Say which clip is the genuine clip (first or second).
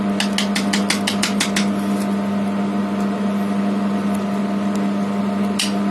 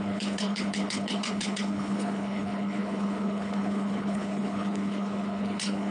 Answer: first